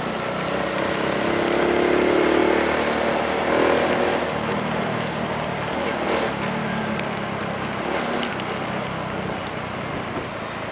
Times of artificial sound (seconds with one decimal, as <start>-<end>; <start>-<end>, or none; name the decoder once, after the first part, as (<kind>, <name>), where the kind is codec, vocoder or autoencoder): 4.9-5.6 (codec, DAC); 6.6-7.4